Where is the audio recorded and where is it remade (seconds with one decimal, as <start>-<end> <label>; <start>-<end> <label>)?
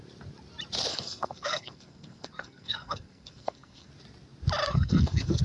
0.0-0.9 recorded; 0.9-3.9 remade; 3.9-4.6 recorded; 4.6-5.4 remade